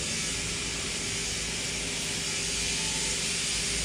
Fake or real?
real